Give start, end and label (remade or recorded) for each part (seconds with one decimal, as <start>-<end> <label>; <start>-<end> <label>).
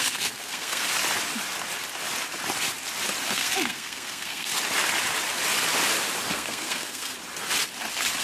0.0-0.8 remade; 0.8-3.3 recorded; 3.3-4.5 remade; 4.5-6.3 recorded; 6.3-7.1 remade; 7.1-8.2 recorded